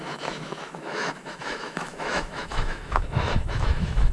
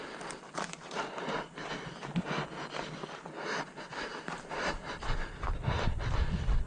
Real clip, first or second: second